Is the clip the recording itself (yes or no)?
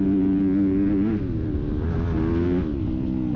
yes